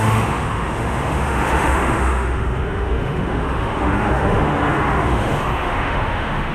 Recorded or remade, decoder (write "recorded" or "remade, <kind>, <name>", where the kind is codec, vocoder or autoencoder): remade, autoencoder, DAC-VAE